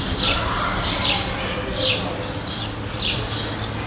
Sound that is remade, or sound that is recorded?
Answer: recorded